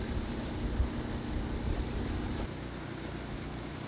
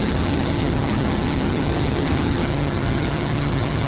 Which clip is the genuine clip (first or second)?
first